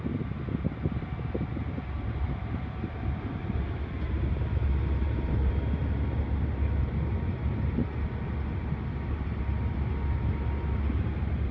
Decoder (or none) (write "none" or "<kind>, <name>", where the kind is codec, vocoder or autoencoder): none